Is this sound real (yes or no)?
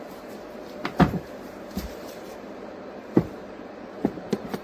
no